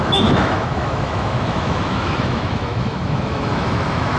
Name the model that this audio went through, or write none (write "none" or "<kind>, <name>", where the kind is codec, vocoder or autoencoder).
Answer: autoencoder, DAC-VAE